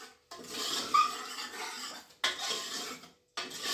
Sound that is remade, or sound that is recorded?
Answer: recorded